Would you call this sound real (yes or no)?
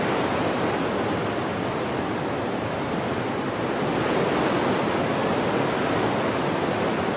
yes